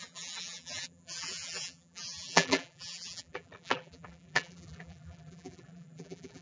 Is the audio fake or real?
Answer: fake